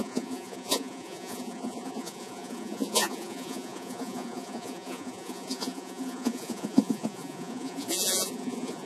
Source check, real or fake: fake